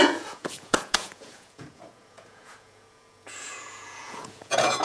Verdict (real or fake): fake